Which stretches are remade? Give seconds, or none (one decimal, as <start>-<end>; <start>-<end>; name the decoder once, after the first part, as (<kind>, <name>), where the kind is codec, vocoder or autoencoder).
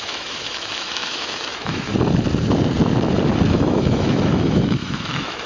0.0-1.9 (autoencoder, DAC-VAE); 3.5-5.5